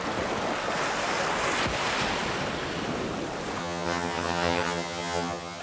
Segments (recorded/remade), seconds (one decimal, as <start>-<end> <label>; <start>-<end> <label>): 0.0-3.6 recorded; 3.6-5.6 remade